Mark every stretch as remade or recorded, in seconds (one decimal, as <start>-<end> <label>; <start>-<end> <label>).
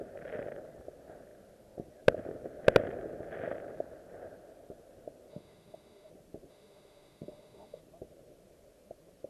0.0-5.3 recorded; 5.3-6.1 remade; 6.1-6.5 recorded; 6.5-7.8 remade; 7.8-9.3 recorded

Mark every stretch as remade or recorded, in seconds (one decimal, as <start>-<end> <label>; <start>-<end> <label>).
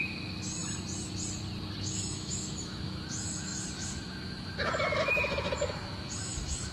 0.0-0.6 remade; 0.6-1.8 recorded; 1.8-6.7 remade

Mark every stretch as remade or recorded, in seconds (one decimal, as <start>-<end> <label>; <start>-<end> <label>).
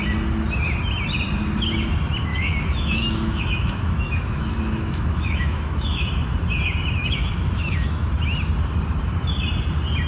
0.0-2.3 recorded; 2.3-6.1 remade; 6.1-7.0 recorded; 7.0-8.1 remade; 8.1-10.1 recorded